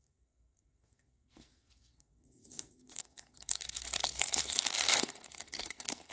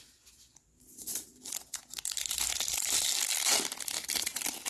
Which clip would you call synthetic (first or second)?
first